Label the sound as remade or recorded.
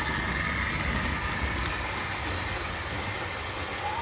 recorded